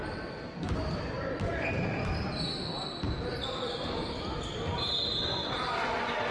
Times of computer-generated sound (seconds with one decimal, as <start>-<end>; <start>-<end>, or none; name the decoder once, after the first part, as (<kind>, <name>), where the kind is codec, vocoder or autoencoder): 1.5-2.7 (vocoder, BigVGAN v2); 3.3-4.2